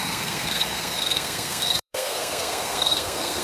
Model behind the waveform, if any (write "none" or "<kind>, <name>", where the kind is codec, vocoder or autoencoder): codec, SNAC